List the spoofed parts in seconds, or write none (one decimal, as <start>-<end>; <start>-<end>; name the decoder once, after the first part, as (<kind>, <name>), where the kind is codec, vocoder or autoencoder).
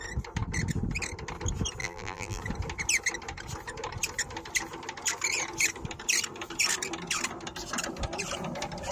1.8-2.4 (vocoder, BigVGAN v2)